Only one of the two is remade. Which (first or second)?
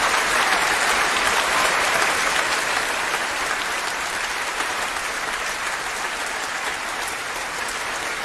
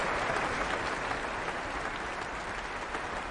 first